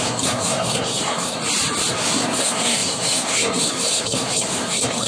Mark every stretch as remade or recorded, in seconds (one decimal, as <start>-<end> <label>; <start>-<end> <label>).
0.0-1.4 remade; 1.4-1.9 recorded; 1.9-5.1 remade